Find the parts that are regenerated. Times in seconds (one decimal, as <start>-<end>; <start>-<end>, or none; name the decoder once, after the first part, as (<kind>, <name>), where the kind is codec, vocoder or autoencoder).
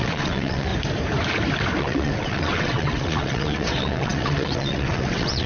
0.0-0.7 (vocoder, WaveNeXt); 1.8-5.5